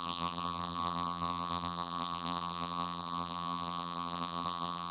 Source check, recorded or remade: remade